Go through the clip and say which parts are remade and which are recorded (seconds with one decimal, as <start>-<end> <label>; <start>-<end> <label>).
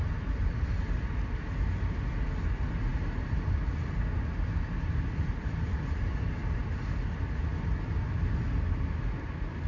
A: 0.0-9.7 recorded